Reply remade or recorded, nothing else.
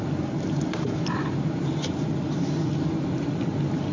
remade